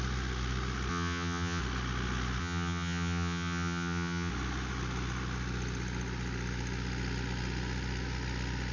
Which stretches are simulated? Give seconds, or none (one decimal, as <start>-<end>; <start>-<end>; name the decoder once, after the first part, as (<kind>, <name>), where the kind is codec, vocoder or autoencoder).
0.9-1.6 (vocoder, HiFi-GAN); 2.4-4.3